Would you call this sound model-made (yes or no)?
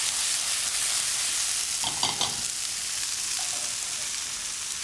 no